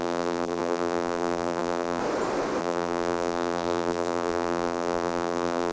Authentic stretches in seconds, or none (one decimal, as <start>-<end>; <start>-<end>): 2.0-2.6